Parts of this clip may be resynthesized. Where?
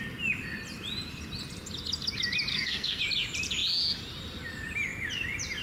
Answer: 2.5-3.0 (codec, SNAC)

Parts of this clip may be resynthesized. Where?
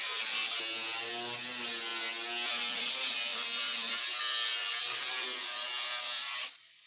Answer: none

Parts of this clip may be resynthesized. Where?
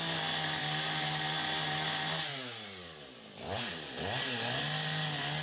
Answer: none